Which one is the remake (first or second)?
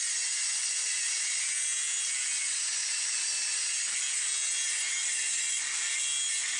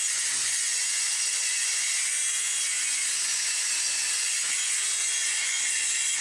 second